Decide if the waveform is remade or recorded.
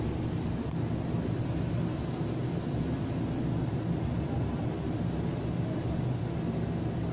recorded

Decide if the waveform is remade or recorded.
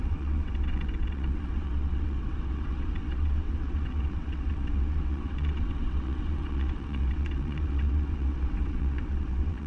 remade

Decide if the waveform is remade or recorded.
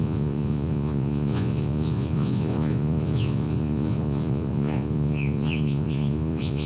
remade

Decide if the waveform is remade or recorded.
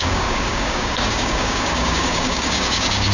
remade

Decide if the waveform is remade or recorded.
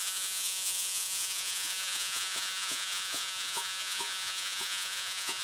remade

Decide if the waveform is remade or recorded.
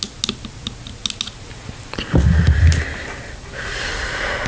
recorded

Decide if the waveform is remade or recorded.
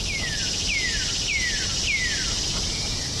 recorded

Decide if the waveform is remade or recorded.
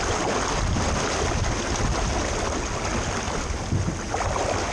recorded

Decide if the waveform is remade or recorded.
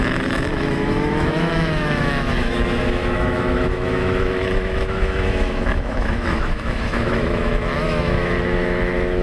remade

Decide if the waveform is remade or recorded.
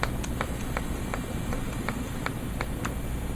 recorded